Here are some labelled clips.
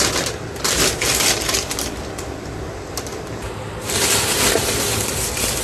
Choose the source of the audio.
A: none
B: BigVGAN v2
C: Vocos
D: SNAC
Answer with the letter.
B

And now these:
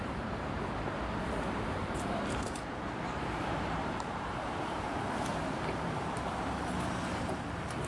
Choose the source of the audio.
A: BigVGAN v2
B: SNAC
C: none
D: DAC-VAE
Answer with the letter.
A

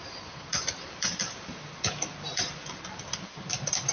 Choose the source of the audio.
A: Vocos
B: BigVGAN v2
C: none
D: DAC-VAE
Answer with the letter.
B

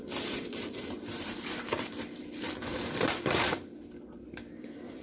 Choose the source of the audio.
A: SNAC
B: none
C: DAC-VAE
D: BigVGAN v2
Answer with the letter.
D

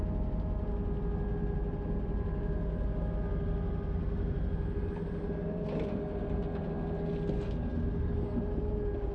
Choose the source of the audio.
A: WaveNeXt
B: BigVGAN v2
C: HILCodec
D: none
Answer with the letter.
D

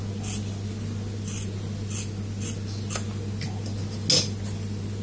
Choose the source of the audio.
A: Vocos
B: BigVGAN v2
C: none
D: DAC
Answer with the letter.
C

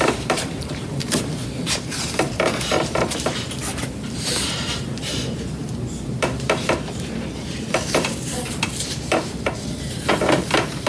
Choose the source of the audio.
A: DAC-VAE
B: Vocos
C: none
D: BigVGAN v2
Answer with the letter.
D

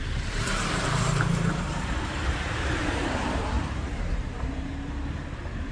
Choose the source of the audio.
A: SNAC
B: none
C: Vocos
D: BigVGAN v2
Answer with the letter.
D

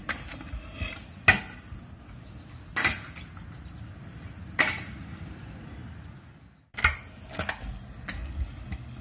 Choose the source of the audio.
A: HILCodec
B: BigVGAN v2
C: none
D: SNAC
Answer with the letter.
C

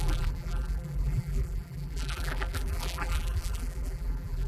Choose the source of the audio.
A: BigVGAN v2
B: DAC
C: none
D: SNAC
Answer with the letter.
A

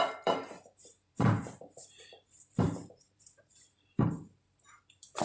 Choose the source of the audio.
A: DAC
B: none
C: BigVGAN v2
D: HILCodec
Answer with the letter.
C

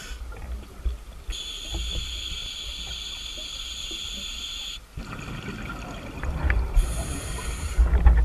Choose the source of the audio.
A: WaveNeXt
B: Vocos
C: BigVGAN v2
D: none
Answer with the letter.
D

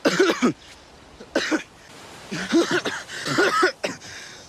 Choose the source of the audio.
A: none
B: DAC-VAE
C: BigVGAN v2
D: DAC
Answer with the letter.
A